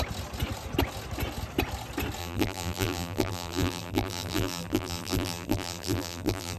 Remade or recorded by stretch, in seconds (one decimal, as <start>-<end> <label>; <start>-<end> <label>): 0.0-2.2 recorded; 2.2-6.6 remade